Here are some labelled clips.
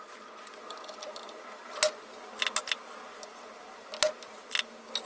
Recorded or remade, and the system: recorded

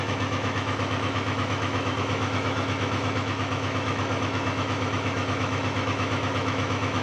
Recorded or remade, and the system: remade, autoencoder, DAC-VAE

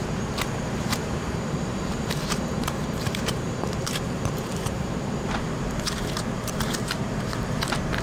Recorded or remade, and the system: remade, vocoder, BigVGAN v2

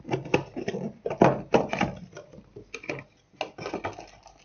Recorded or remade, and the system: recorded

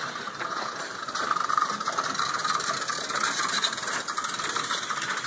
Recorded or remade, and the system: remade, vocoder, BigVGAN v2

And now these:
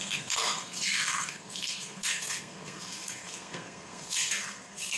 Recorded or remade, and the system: remade, codec, SNAC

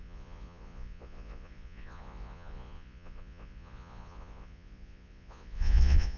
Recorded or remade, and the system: remade, vocoder, Vocos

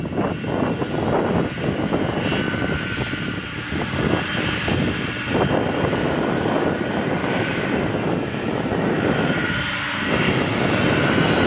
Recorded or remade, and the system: recorded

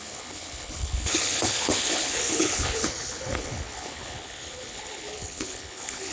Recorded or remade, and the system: remade, codec, HILCodec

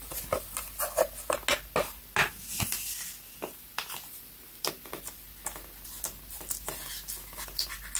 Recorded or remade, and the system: recorded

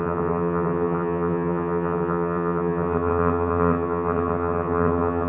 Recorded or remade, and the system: remade, vocoder, HiFi-GAN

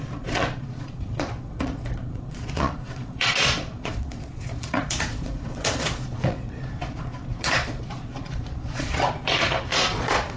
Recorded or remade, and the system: remade, vocoder, Vocos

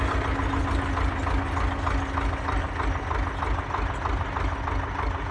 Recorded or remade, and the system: recorded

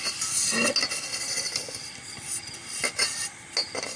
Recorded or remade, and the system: recorded